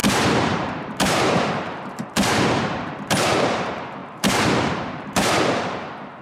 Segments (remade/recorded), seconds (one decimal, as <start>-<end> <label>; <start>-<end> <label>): 0.0-6.2 remade